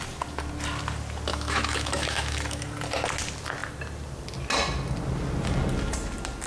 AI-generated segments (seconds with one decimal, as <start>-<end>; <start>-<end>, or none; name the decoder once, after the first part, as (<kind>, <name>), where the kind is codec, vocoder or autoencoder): 1.3-2.6 (autoencoder, DAC-VAE)